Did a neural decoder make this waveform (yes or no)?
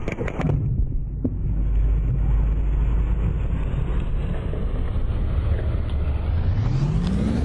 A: no